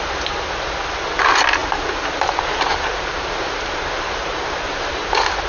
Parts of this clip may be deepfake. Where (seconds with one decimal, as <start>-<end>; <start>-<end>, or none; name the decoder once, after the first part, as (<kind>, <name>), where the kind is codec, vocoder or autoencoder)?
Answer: 1.6-4.9 (vocoder, BigVGAN v2)